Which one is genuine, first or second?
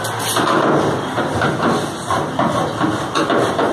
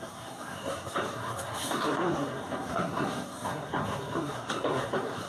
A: first